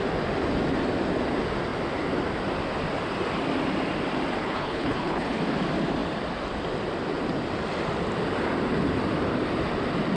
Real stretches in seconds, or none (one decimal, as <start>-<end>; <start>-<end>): 0.0-4.4; 5.4-10.2